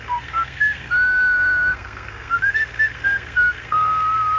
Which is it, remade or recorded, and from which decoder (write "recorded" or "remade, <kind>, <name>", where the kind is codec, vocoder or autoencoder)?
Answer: remade, codec, SNAC